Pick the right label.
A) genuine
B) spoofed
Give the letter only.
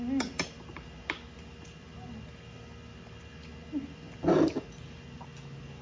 A